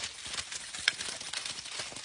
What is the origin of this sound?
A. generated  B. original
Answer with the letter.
B